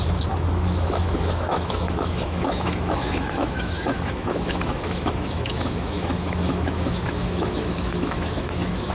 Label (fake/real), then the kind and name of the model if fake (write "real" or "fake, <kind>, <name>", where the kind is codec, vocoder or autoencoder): fake, autoencoder, DAC-VAE